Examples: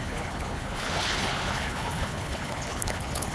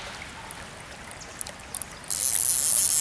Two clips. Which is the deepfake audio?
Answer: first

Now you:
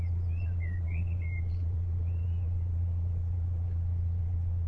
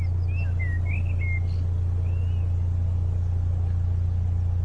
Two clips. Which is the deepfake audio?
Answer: first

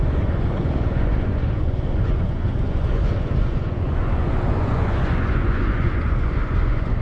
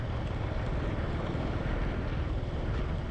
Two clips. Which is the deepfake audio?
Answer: first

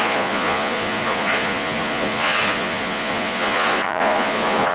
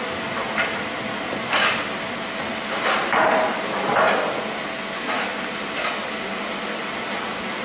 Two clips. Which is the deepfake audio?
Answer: first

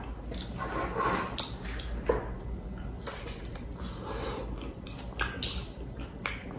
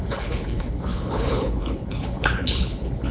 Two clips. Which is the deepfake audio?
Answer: second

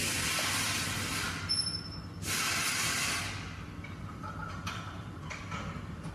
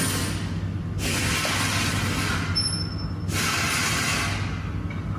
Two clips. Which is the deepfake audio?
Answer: first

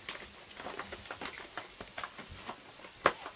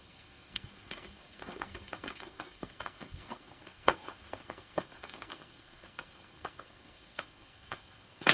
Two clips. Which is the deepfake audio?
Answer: second